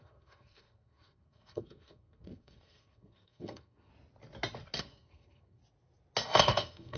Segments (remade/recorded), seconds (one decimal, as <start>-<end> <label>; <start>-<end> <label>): 0.0-3.9 remade; 3.9-4.8 recorded; 4.8-5.6 remade; 5.6-6.4 recorded; 6.4-7.0 remade